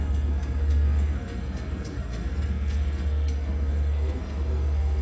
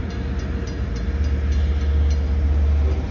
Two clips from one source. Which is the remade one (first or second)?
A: first